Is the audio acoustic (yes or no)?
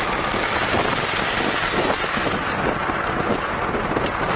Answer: yes